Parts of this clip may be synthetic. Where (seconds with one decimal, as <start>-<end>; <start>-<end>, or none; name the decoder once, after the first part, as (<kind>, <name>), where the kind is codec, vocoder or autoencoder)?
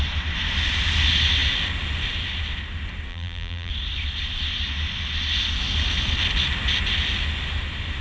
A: 3.1-3.7 (vocoder, BigVGAN v2)